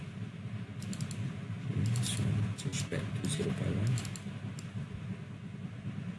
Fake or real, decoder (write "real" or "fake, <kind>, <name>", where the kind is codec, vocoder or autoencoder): real